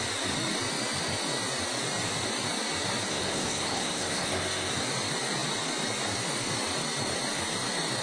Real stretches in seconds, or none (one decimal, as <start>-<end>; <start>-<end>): 0.0-3.1; 4.7-8.0